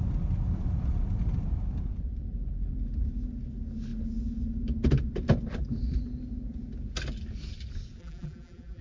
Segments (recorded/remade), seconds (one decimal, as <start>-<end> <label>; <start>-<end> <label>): 0.0-8.0 recorded; 8.0-8.8 remade

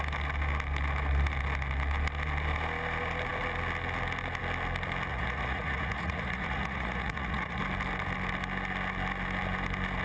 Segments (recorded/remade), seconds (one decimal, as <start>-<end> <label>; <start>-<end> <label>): 0.0-5.1 recorded; 5.1-7.6 remade; 7.6-10.0 recorded

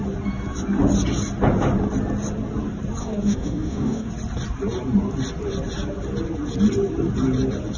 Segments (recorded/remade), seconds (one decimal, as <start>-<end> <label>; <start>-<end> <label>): 0.0-3.0 recorded; 3.0-4.1 remade; 4.1-7.8 recorded

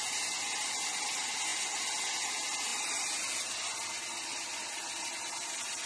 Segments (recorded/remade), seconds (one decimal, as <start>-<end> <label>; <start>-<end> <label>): 0.0-5.9 recorded